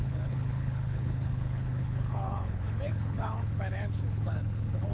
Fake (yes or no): yes